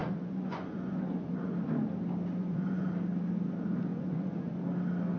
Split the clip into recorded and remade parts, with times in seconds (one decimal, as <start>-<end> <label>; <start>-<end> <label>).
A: 0.0-1.5 remade; 1.5-2.4 recorded; 2.4-2.9 remade; 2.9-3.9 recorded; 3.9-4.5 remade; 4.5-5.2 recorded